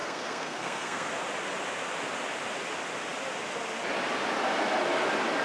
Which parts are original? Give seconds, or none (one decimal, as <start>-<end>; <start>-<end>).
1.1-5.4